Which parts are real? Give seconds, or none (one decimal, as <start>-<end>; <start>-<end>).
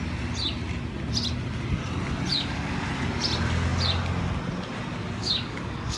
0.0-2.3; 2.9-5.2